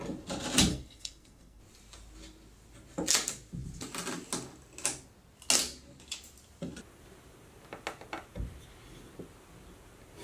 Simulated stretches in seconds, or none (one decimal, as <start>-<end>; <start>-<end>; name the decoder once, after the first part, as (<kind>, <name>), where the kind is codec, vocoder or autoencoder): 0.7-1.6 (codec, SNAC)